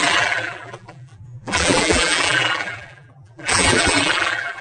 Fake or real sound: fake